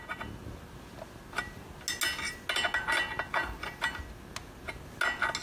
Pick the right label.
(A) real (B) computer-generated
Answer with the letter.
A